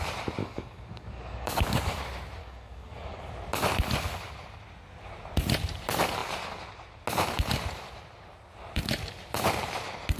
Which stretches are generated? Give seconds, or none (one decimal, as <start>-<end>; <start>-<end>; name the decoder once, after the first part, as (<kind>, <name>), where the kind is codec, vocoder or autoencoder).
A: 0.4-2.0 (codec, DAC); 2.4-3.3

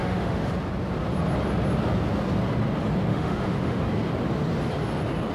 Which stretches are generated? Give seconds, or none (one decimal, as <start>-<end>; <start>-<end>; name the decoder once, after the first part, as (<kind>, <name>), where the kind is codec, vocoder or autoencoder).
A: 0.0-0.5 (autoencoder, DAC-VAE); 3.1-3.8